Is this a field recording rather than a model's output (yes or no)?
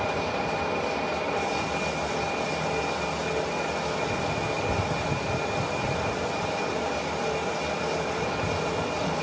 yes